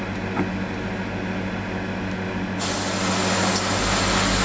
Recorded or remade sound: recorded